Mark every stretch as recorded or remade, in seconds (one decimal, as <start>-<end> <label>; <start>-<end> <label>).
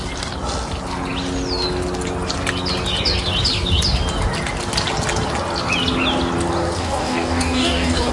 0.0-6.8 recorded; 6.8-8.1 remade